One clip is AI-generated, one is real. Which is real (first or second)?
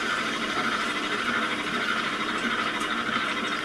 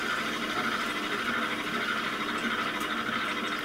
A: second